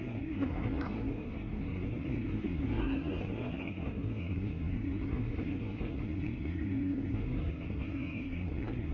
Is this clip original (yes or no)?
no